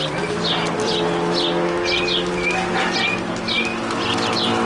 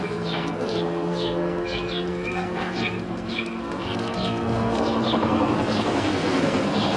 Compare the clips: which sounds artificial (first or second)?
second